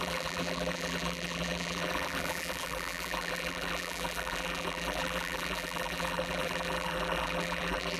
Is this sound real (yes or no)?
no